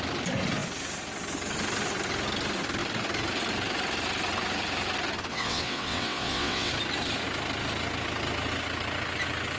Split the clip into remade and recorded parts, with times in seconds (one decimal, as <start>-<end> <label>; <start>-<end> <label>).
0.0-5.3 recorded; 5.3-6.7 remade; 6.7-9.6 recorded